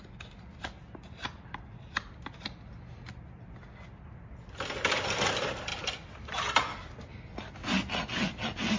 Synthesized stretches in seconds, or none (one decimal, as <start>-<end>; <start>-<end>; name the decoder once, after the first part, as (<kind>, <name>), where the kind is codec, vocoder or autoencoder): none